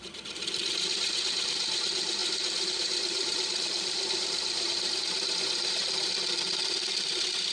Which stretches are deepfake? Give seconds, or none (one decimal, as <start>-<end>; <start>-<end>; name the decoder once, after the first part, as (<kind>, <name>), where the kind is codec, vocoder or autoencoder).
2.2-5.0 (vocoder, BigVGAN v2)